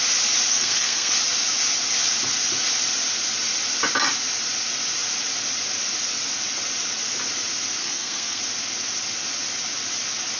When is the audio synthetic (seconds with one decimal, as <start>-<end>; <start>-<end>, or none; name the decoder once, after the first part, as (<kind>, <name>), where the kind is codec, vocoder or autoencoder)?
0.5-1.1 (codec, SNAC); 7.8-8.4